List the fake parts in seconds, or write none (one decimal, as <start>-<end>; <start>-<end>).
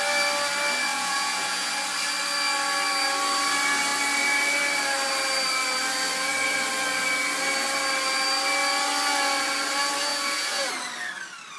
0.9-1.7; 10.1-10.7